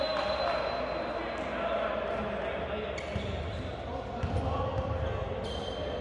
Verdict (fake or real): real